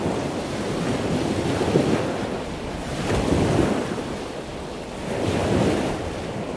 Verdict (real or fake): real